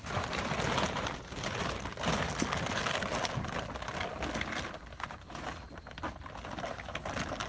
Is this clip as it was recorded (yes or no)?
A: yes